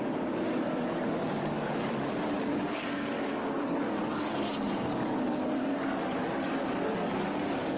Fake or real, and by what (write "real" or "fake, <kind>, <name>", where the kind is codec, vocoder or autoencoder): fake, codec, DAC